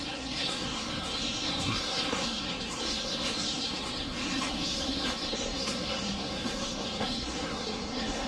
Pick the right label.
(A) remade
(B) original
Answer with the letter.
A